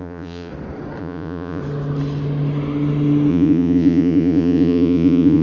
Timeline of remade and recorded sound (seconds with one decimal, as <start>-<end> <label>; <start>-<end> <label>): 0.0-0.5 remade; 0.5-1.0 recorded; 1.0-1.6 remade; 1.6-3.3 recorded; 3.3-5.4 remade